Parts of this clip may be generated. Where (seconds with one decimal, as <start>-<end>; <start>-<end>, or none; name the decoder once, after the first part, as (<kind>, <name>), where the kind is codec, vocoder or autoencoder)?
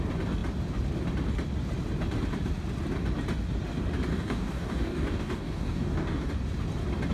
4.1-6.3 (codec, DAC)